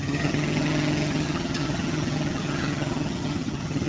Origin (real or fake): fake